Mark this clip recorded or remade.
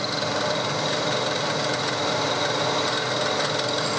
recorded